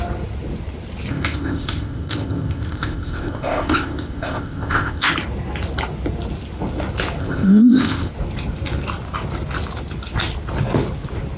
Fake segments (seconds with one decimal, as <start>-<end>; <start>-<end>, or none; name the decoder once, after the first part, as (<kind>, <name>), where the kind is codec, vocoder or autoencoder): 1.1-5.1 (codec, ZipCodec); 7.2-8.1